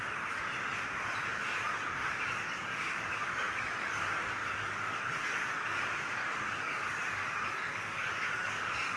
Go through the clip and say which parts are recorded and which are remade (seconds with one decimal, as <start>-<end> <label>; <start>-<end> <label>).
0.0-1.3 recorded; 1.3-5.8 remade; 5.8-6.2 recorded; 6.2-9.0 remade

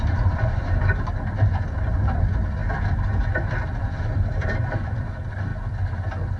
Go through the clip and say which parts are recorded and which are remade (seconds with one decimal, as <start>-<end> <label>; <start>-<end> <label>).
0.0-2.3 remade; 2.3-2.9 recorded; 2.9-5.5 remade; 5.5-6.4 recorded

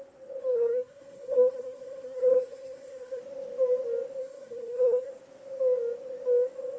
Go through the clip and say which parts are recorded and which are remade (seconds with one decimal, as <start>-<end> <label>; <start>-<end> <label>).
0.0-0.5 recorded; 0.5-3.2 remade; 3.2-4.2 recorded; 4.2-5.1 remade; 5.1-6.8 recorded

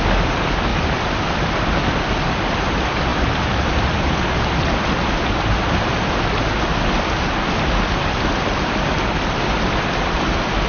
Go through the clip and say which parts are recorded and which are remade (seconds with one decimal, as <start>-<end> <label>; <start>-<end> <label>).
0.0-10.7 remade

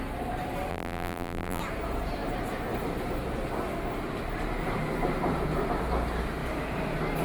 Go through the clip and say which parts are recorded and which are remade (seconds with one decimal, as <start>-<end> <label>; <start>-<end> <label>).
0.0-0.7 recorded; 0.7-1.6 remade; 1.6-7.2 recorded